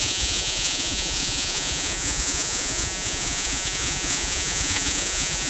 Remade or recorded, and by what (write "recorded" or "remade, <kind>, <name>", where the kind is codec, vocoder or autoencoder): remade, vocoder, Vocos